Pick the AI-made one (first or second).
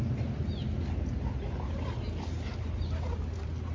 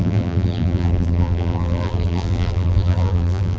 second